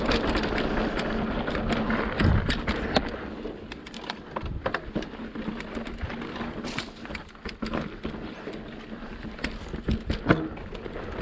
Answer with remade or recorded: recorded